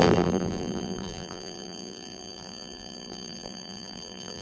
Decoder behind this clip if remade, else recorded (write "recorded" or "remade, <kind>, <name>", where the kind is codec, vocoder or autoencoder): remade, vocoder, BigVGAN v2